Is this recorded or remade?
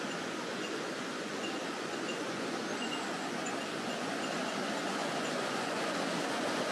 remade